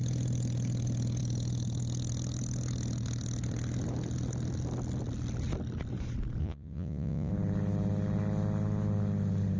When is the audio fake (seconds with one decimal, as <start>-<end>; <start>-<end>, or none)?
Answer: 6.4-7.3

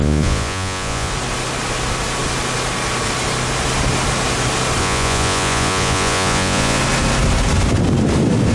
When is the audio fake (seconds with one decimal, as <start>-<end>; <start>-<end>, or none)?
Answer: 0.0-1.1; 4.8-6.8

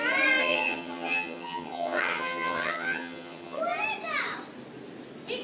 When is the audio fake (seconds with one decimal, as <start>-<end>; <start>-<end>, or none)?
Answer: 0.4-3.6

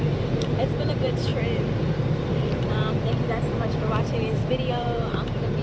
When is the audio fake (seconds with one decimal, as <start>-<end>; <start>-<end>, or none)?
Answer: 0.0-1.3; 4.7-5.6

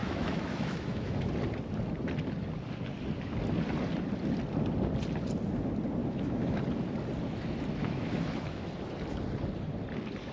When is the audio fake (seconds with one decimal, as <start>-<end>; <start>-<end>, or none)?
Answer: 0.0-1.3; 6.0-6.6; 7.8-8.7

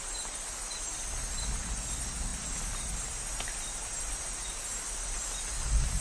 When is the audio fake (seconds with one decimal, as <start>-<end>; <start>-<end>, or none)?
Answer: none